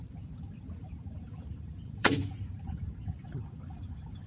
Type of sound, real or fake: fake